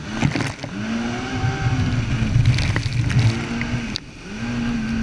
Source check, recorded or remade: recorded